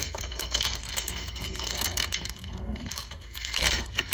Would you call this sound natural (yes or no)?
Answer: no